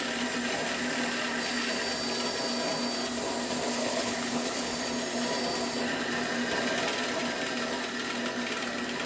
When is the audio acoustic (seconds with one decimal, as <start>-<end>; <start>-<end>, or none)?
0.0-3.8; 4.8-9.1